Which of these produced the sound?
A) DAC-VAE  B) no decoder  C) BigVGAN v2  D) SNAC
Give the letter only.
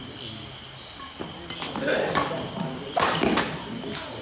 B